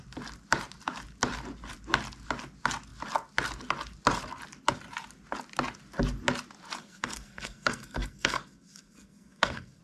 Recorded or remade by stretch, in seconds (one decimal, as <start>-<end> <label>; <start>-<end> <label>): 0.0-6.8 recorded; 6.8-9.8 remade